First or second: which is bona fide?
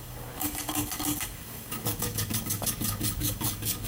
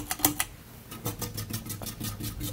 second